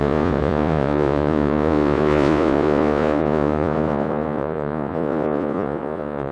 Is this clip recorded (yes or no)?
no